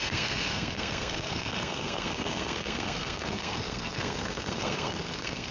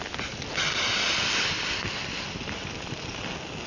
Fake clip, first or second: first